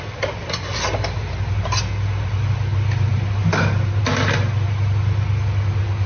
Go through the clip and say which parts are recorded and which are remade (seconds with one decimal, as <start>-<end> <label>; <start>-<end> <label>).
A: 0.0-6.1 recorded